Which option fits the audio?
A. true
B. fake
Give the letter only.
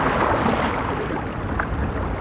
A